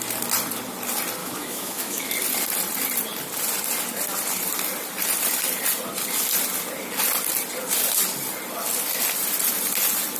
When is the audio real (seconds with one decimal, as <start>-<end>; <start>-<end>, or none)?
0.0-1.2; 2.1-10.2